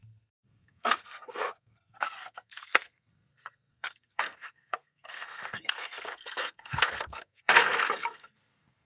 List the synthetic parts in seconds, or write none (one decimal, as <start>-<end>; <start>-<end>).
0.0-8.8